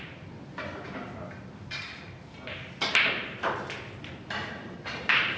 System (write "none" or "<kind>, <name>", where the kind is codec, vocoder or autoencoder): none